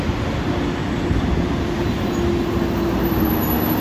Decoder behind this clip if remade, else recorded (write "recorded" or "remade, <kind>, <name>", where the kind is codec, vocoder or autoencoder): recorded